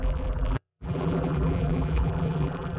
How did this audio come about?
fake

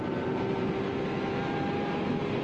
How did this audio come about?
fake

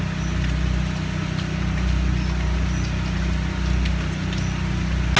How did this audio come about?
real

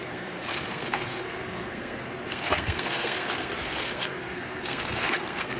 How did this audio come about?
fake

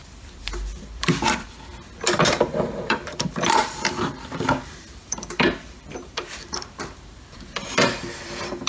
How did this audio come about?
fake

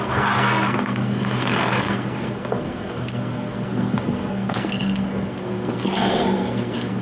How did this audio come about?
fake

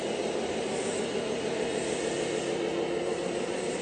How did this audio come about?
fake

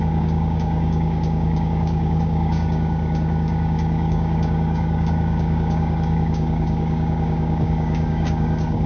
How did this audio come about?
fake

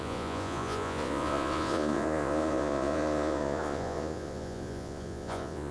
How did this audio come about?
fake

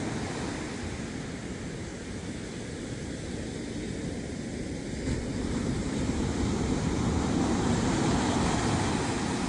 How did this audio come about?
fake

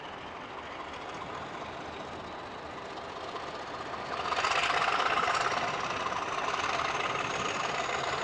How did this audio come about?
real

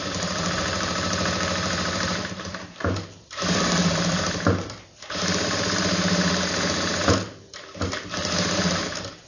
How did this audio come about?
fake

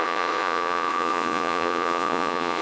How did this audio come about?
fake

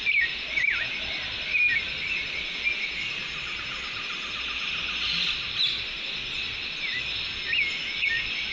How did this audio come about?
real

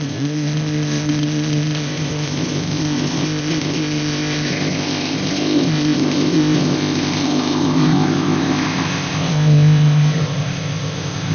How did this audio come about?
fake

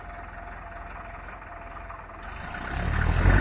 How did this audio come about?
real